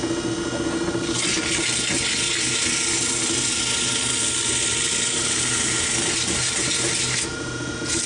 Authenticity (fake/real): real